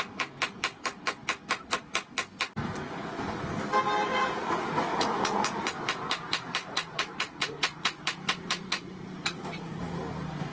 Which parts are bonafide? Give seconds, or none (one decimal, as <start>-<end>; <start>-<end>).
0.0-4.1; 5.4-6.6; 10.0-10.5